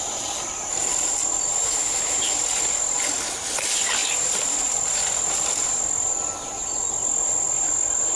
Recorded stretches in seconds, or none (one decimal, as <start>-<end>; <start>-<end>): 0.0-1.6; 2.2-8.2